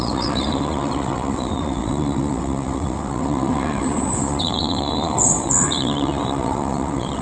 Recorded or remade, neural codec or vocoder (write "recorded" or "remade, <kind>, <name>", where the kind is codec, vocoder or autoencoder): remade, vocoder, WaveNeXt